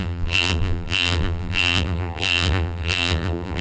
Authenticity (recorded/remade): remade